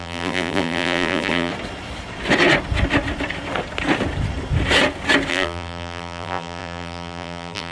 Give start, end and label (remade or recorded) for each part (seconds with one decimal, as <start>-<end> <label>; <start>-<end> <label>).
0.0-1.5 remade; 1.5-5.3 recorded; 5.3-7.7 remade